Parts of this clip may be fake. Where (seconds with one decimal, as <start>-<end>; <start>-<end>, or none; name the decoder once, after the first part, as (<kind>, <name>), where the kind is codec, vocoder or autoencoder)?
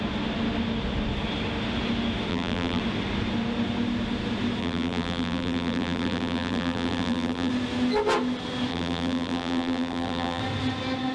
2.3-2.8 (vocoder, BigVGAN v2); 4.6-7.5; 8.7-10.4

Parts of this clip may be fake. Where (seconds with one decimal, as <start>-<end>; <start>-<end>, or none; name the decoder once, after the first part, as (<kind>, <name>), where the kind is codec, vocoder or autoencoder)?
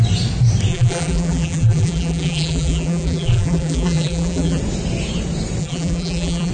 0.7-4.6 (vocoder, BigVGAN v2); 5.6-6.5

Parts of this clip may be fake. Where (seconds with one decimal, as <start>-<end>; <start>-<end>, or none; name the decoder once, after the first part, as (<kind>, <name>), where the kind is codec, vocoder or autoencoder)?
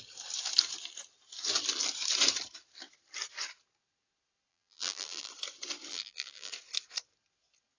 4.5-5.3 (vocoder, BigVGAN v2); 5.9-6.5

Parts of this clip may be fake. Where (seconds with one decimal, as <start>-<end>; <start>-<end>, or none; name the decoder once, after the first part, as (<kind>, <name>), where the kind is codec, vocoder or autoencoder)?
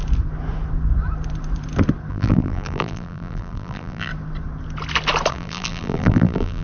2.1-4.1 (vocoder, BigVGAN v2); 5.3-6.6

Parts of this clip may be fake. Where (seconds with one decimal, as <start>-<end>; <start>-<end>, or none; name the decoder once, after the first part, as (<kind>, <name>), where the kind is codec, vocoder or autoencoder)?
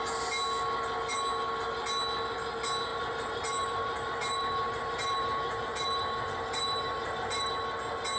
2.9-7.5 (vocoder, BigVGAN v2)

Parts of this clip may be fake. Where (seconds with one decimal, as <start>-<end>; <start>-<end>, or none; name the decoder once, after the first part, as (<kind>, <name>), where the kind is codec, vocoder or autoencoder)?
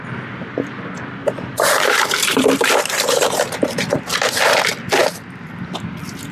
1.2-4.4 (vocoder, BigVGAN v2)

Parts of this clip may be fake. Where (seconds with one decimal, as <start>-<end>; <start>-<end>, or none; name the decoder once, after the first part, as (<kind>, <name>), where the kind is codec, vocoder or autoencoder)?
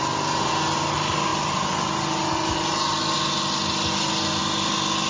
none